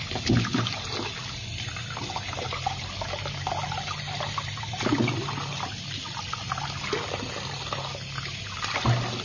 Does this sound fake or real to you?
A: real